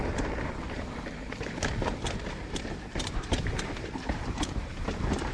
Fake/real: fake